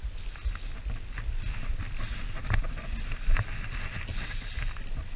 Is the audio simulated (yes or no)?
no